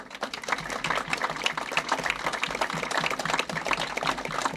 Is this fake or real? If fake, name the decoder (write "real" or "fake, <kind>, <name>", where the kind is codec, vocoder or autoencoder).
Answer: real